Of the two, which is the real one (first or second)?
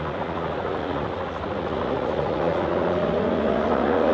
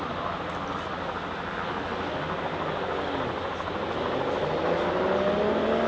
second